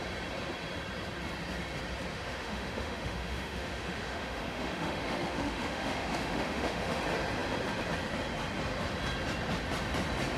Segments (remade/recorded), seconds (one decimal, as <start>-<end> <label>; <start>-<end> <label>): 0.0-2.1 recorded; 2.1-7.0 remade; 7.0-10.4 recorded